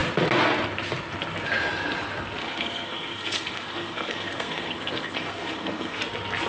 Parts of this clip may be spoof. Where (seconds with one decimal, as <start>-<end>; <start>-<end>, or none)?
2.4-6.0